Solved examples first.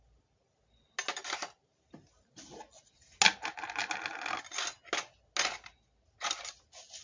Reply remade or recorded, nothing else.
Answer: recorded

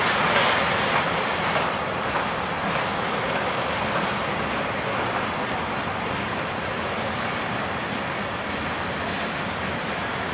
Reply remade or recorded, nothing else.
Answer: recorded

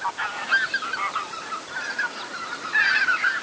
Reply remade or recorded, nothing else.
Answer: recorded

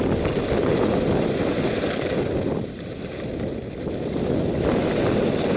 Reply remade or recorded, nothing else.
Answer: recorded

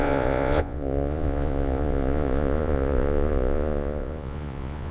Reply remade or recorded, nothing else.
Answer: remade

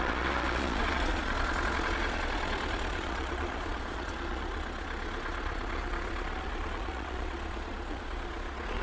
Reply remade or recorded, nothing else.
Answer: remade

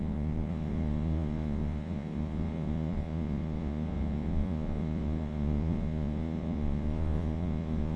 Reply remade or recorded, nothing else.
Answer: remade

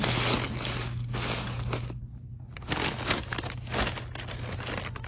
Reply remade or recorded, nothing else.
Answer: recorded